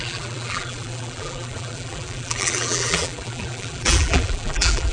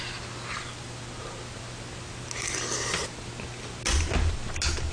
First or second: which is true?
second